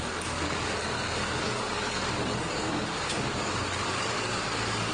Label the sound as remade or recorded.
remade